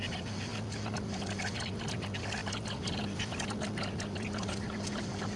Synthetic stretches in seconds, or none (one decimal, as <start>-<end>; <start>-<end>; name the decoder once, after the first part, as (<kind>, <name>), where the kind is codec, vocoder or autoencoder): none